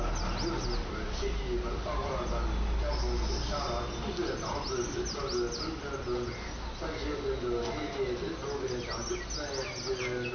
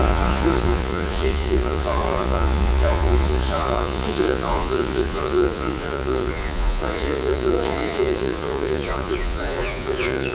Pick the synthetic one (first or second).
second